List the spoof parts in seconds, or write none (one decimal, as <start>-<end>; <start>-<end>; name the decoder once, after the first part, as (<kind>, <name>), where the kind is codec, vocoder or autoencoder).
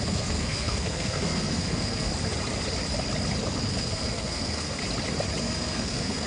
0.0-2.1 (codec, SNAC); 3.7-4.8; 5.4-6.3